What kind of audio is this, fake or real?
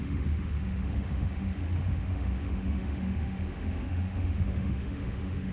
fake